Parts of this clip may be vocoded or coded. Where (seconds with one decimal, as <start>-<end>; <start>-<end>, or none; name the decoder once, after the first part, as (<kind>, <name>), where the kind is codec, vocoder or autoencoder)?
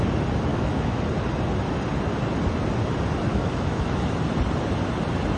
0.5-1.0 (autoencoder, DAC-VAE); 3.3-4.0